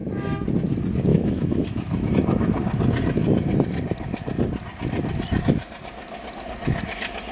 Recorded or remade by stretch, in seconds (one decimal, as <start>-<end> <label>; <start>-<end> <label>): 0.0-0.5 remade; 0.5-1.1 recorded; 1.1-2.1 remade; 2.1-7.3 recorded

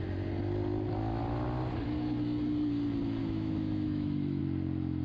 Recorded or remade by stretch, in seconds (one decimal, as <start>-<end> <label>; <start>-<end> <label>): 0.0-3.2 recorded; 3.2-4.4 remade; 4.4-5.0 recorded

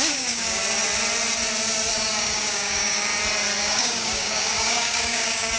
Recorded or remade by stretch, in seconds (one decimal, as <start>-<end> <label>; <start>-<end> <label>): 0.0-0.6 remade; 0.6-1.9 recorded; 1.9-3.1 remade; 3.1-3.6 recorded; 3.6-5.6 remade

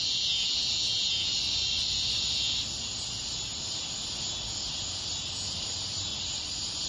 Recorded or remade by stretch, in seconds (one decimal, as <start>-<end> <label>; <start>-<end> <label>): 0.0-1.3 recorded; 1.3-2.2 remade; 2.2-6.1 recorded; 6.1-6.9 remade

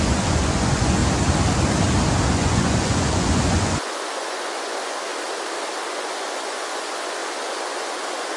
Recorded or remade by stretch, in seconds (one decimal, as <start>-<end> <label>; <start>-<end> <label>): 0.0-1.0 remade; 1.0-2.3 recorded; 2.3-5.1 remade; 5.1-5.9 recorded; 5.9-8.4 remade

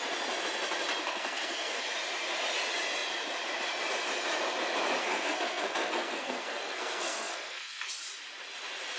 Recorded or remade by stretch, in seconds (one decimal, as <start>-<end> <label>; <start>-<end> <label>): 0.0-1.0 recorded; 1.0-1.8 remade; 1.8-5.0 recorded; 5.0-7.9 remade; 7.9-9.0 recorded

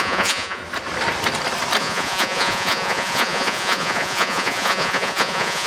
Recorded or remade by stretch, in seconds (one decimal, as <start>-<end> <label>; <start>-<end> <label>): 0.0-0.6 remade; 0.6-1.8 recorded; 1.8-5.7 remade